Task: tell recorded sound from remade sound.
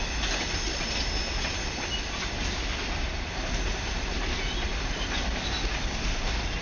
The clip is recorded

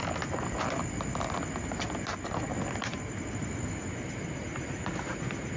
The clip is recorded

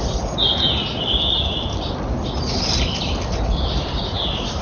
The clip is recorded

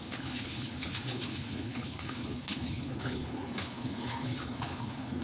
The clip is remade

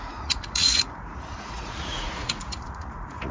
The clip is remade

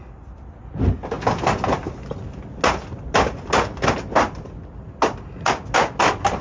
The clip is recorded